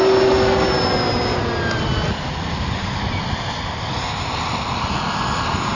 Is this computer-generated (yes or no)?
no